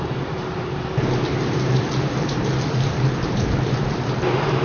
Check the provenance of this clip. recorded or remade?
remade